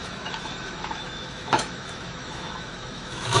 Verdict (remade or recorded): remade